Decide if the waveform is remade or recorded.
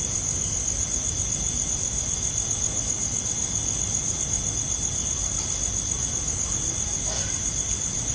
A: recorded